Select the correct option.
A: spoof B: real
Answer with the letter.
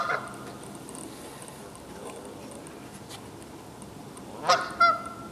B